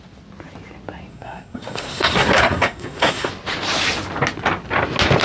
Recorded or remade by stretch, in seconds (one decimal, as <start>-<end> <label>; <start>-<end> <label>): 0.0-1.1 recorded; 1.1-3.3 remade; 3.3-5.2 recorded